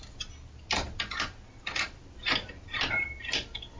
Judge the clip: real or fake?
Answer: real